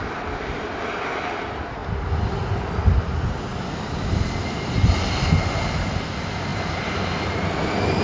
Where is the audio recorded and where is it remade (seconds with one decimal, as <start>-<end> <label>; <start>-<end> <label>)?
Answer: 0.0-6.5 recorded; 6.5-7.5 remade; 7.5-8.0 recorded